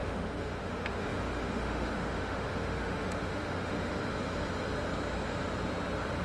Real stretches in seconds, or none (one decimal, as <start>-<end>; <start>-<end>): 4.0-6.2